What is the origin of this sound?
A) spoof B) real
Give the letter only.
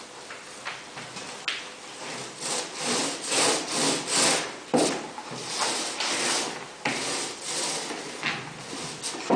B